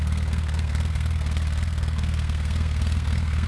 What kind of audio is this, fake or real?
fake